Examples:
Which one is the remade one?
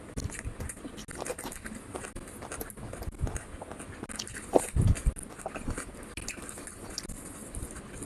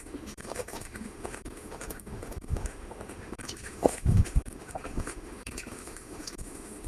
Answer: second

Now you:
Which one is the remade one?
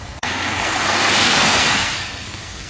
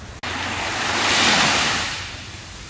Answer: first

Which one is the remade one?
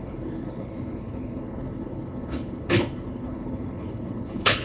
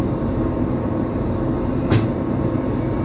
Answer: first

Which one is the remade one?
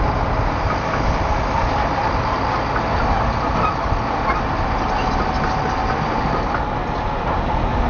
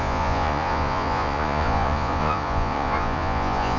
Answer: second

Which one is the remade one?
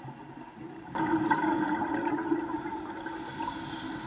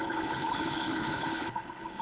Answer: second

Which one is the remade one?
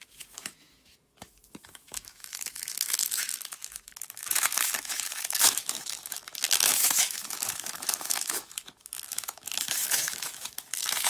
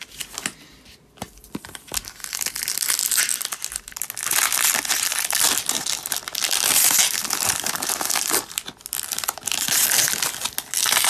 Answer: first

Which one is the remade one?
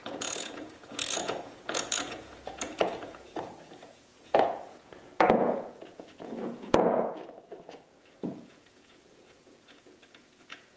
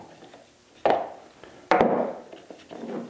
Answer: first